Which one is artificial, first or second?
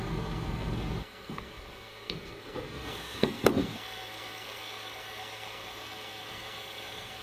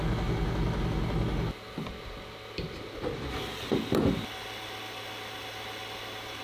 first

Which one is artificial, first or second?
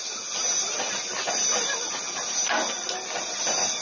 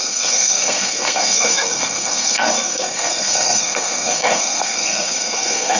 second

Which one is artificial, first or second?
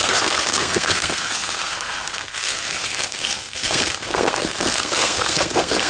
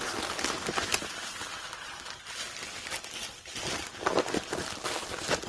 first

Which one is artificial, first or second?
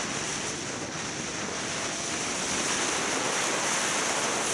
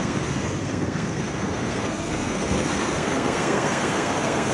second